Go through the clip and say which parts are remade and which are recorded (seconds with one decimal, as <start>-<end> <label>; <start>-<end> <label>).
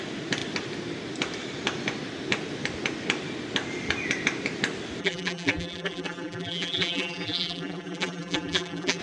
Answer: 0.0-5.0 recorded; 5.0-9.0 remade